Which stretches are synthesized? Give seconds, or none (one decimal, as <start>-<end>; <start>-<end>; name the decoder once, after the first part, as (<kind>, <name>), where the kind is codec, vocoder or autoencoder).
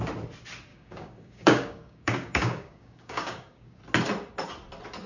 0.7-3.8 (codec, DAC)